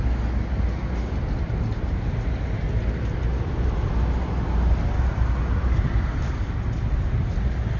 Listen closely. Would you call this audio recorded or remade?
recorded